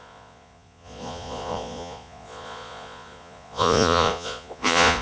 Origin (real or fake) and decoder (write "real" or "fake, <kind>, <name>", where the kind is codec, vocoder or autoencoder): fake, vocoder, Vocos